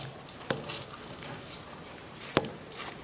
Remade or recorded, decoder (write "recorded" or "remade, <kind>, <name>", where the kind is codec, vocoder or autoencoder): recorded